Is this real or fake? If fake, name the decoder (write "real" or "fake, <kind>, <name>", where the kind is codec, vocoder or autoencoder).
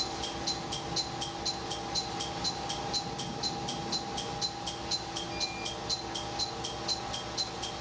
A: real